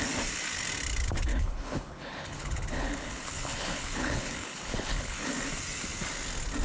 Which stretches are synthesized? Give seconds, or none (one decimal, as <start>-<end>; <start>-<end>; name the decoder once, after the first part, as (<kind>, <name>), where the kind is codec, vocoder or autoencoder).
1.3-5.3 (codec, HILCodec)